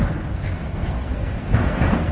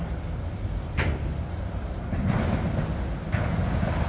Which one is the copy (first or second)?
first